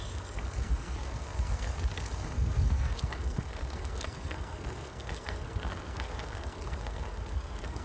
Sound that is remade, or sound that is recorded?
remade